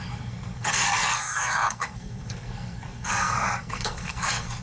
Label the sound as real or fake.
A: fake